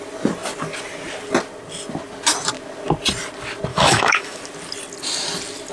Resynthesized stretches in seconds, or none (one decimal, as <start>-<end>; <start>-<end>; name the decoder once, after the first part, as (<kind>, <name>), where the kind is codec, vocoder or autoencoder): 3.7-4.4 (autoencoder, DAC-VAE)